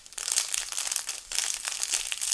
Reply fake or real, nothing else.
real